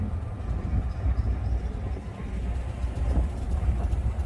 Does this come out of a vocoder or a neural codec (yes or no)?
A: no